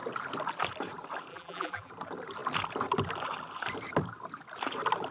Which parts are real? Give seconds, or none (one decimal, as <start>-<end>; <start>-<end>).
0.0-1.3; 1.9-5.1